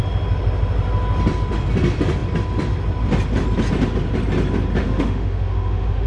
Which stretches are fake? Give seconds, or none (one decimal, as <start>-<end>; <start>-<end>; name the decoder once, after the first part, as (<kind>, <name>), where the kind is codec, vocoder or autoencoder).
4.8-6.1 (autoencoder, DAC-VAE)